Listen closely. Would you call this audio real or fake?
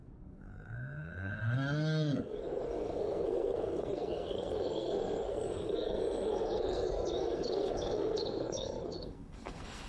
fake